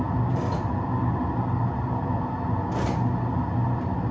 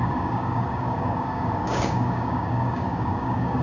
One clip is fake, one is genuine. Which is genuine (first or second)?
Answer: first